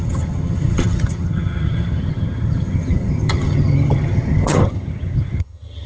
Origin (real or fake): fake